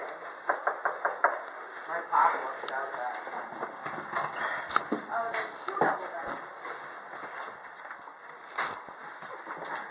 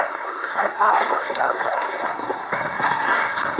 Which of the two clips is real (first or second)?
first